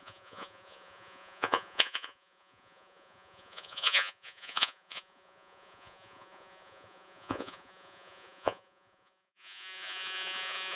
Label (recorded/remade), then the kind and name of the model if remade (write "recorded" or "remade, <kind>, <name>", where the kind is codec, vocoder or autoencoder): remade, vocoder, Vocos